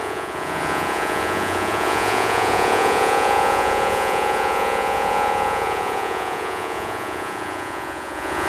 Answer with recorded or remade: remade